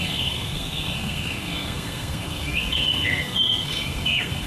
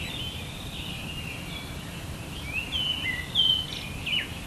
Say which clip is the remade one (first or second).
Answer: first